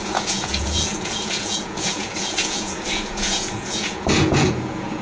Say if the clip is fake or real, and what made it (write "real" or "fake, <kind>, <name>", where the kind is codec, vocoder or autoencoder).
fake, vocoder, Vocos